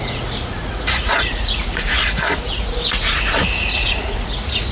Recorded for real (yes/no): no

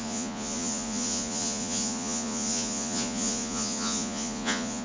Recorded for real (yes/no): no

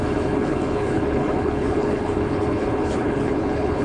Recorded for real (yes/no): no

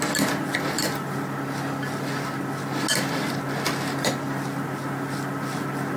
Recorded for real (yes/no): yes